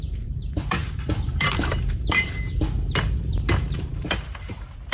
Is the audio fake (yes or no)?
yes